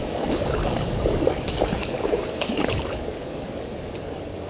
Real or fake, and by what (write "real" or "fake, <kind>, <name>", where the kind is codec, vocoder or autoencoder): fake, codec, DAC